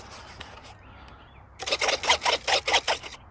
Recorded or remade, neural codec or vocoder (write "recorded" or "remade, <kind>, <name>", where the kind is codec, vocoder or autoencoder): recorded